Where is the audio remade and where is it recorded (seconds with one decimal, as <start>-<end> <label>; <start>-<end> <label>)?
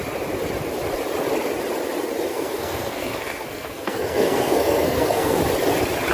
0.0-2.3 recorded; 2.3-5.4 remade; 5.4-6.1 recorded